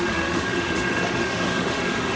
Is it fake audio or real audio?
fake